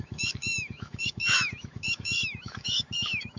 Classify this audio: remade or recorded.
remade